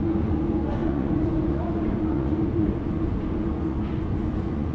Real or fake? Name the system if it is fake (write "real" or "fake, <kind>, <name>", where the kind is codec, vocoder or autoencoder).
fake, vocoder, Vocos